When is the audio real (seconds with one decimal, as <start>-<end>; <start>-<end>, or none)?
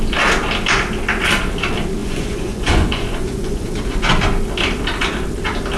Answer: 0.0-2.0; 3.8-5.8